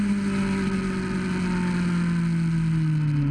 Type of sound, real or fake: real